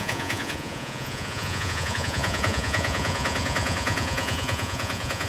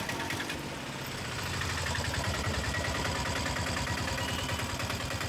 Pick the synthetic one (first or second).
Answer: first